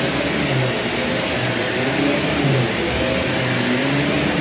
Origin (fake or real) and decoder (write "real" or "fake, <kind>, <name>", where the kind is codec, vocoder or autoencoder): real